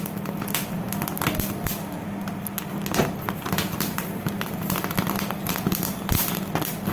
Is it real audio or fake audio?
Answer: real